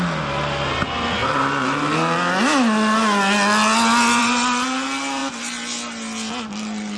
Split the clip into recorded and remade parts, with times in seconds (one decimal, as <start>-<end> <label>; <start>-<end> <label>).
0.0-7.0 recorded